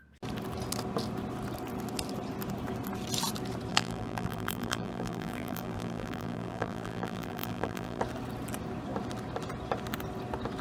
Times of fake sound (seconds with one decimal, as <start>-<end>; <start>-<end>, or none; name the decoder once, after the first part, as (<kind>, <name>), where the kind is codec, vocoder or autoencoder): 3.7-8.0 (vocoder, BigVGAN v2)